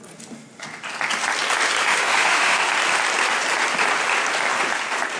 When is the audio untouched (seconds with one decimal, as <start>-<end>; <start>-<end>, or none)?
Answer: 0.0-1.8; 2.7-5.2